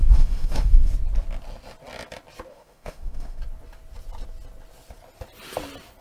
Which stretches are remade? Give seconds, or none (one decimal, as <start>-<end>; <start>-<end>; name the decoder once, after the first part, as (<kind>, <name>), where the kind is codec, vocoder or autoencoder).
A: 0.0-0.9 (autoencoder, DAC-VAE); 2.5-3.4